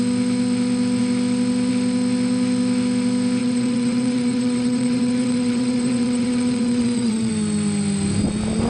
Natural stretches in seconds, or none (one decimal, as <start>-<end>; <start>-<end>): 0.0-3.4; 7.3-8.7